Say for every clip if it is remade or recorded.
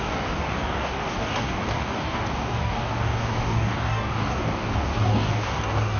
remade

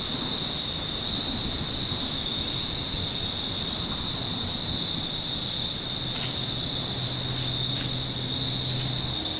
recorded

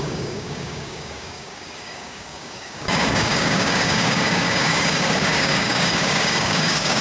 remade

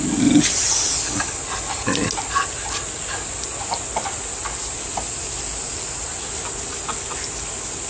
recorded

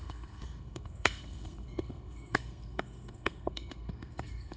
remade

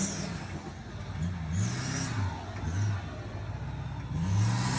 recorded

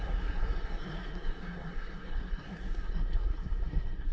remade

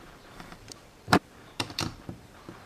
remade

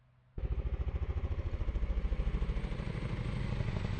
recorded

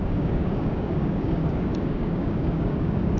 remade